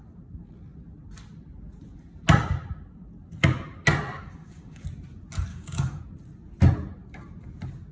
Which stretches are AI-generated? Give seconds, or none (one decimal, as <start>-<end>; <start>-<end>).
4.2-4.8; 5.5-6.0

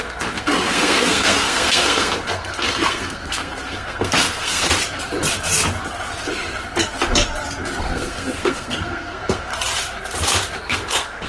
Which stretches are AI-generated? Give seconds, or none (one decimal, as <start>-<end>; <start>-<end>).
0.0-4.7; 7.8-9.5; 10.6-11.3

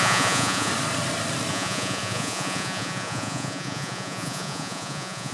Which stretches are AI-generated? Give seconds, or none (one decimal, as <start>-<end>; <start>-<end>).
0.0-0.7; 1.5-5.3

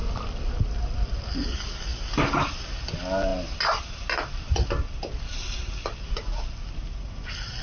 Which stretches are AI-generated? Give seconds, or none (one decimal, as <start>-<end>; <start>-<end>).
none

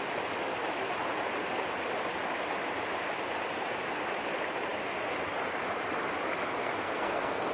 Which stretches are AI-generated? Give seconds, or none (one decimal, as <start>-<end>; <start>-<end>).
6.6-7.5

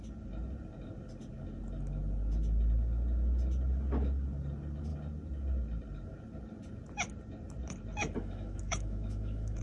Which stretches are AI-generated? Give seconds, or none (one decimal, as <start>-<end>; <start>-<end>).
8.0-9.6

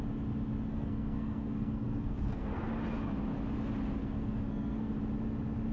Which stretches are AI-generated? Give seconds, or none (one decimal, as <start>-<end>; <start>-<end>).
0.7-2.7; 4.0-4.9